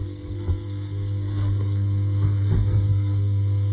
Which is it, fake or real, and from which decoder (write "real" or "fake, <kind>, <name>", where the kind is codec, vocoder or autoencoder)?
fake, codec, SNAC